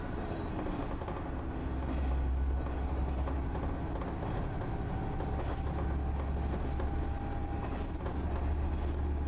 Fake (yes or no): no